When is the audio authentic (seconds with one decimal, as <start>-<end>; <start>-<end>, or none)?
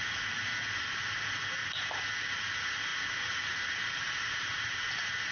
0.0-5.3